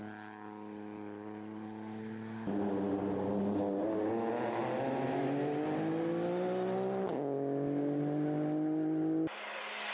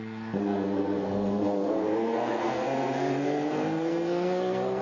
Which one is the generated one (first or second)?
second